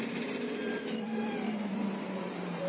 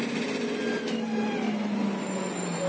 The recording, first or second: second